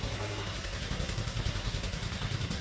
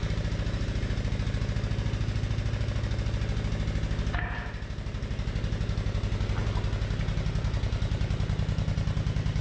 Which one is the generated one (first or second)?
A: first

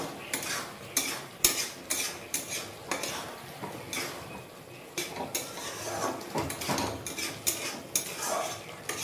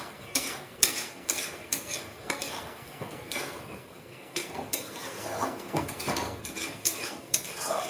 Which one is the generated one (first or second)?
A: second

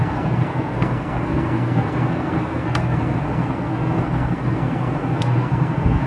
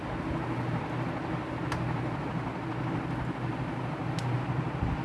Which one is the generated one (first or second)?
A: first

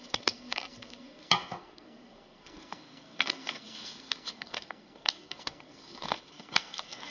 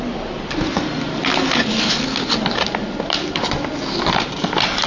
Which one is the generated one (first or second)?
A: first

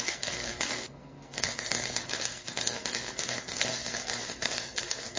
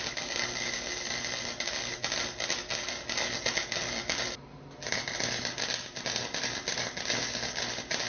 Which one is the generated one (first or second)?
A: first